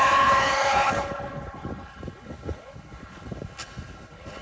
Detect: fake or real fake